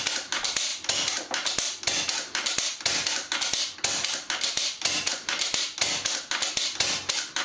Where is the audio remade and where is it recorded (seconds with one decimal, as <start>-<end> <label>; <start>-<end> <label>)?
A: 0.0-7.4 recorded